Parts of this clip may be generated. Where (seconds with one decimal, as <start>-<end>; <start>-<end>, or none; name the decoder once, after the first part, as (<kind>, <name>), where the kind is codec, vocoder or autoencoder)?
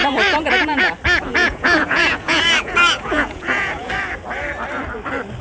0.0-0.8 (vocoder, Vocos); 1.3-3.9